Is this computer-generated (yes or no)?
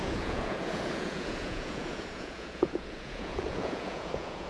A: yes